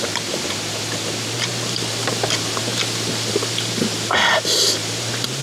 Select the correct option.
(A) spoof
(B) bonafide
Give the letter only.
B